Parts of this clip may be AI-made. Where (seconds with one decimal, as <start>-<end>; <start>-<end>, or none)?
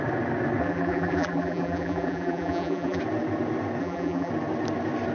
0.6-3.0; 3.8-4.3